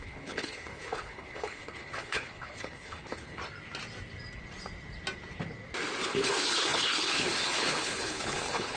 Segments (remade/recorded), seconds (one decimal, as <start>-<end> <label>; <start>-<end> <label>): 0.0-3.4 remade; 3.4-6.0 recorded; 6.0-8.8 remade